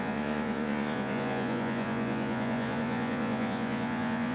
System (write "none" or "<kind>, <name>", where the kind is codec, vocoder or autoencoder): vocoder, Vocos